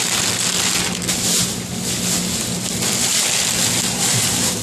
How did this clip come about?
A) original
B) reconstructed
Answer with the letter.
A